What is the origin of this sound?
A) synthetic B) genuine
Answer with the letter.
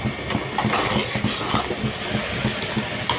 B